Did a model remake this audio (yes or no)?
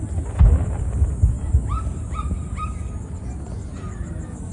no